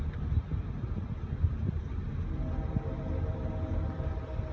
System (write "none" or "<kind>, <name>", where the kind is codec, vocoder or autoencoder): none